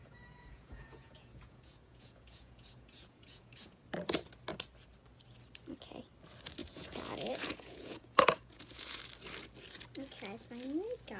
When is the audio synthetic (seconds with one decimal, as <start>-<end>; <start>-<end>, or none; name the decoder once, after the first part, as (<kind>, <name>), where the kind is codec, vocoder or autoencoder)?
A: 0.0-3.8 (vocoder, Vocos); 6.6-9.0